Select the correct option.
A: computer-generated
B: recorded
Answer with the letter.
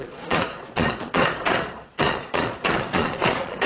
A